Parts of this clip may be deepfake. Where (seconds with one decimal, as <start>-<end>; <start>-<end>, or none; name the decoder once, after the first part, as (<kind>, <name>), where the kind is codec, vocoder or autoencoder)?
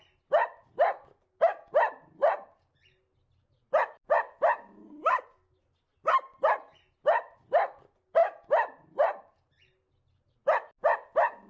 none